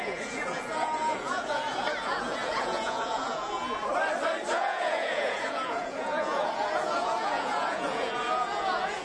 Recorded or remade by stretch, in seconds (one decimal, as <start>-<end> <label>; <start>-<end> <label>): 0.0-3.9 remade; 3.9-4.5 recorded; 4.5-9.0 remade